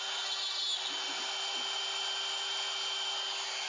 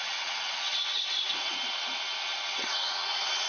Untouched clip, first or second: first